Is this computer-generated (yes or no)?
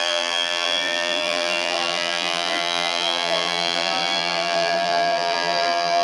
yes